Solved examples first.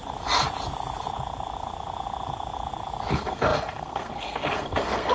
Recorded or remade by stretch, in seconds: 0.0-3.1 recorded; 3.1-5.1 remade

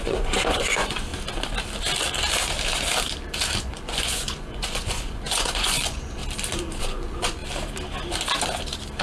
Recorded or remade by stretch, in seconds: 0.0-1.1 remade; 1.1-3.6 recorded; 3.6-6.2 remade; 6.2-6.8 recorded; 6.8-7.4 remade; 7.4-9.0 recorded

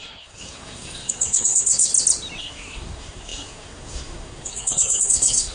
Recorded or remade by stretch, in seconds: 0.0-1.9 remade; 1.9-2.4 recorded; 2.4-5.5 remade

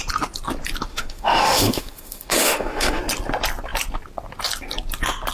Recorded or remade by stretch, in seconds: 0.0-0.9 recorded; 0.9-3.0 remade; 3.0-5.3 recorded

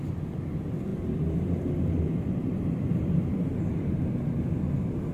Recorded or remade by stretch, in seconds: 0.0-0.9 recorded; 0.9-3.7 remade; 3.7-5.1 recorded